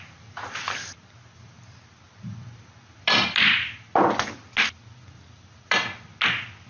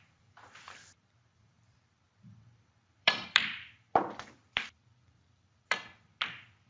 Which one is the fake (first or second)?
second